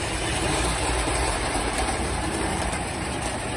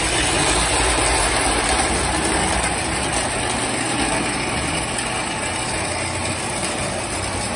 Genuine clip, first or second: second